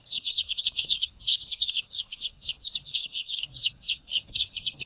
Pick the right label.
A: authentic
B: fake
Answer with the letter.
B